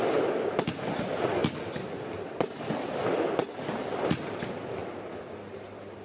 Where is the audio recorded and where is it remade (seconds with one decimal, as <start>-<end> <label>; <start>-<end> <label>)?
0.0-6.0 recorded